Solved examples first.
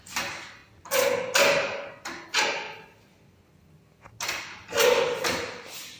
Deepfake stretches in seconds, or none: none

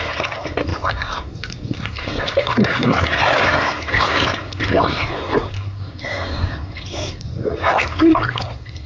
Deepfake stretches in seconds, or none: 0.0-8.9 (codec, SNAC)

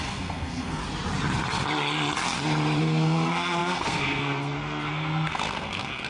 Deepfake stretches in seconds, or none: 0.0-0.8 (codec, SNAC); 2.8-6.1

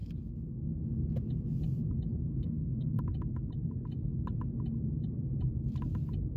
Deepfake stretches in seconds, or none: 2.3-3.0 (codec, SNAC)